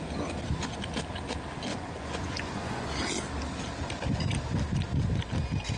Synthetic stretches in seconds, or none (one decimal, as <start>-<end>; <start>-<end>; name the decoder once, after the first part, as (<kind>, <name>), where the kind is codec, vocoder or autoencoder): 1.7-3.0 (vocoder, Vocos)